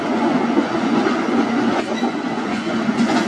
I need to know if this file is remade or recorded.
remade